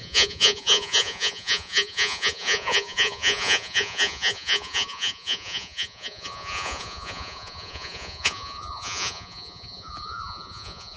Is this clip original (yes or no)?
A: no